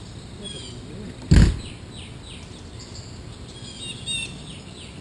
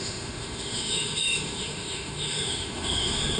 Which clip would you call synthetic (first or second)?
second